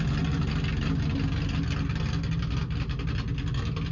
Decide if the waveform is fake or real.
real